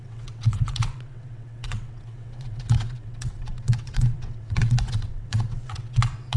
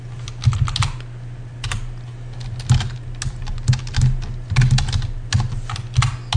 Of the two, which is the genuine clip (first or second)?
second